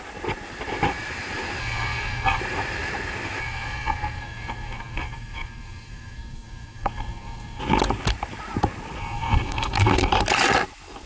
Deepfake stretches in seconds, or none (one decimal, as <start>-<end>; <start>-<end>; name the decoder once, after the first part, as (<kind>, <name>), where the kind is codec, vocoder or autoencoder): 1.6-2.4 (codec, SNAC); 3.4-7.6; 9.0-10.1